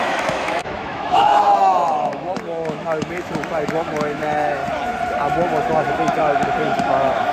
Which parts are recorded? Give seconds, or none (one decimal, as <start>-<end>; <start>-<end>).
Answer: 4.6-5.5